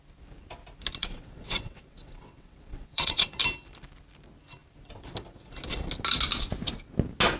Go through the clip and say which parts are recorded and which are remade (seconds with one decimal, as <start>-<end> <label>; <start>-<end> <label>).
0.0-1.0 recorded; 1.0-3.4 remade; 3.4-7.4 recorded